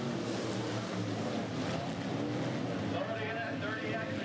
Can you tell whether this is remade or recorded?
recorded